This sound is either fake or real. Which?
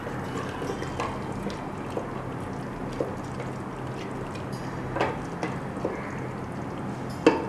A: real